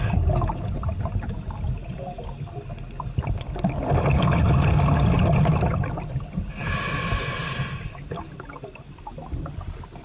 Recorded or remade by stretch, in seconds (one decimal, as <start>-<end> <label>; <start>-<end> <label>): 0.0-10.0 recorded

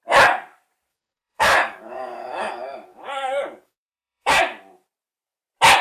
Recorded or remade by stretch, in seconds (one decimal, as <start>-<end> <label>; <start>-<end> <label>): 0.0-0.9 recorded; 0.9-4.4 remade; 4.4-5.8 recorded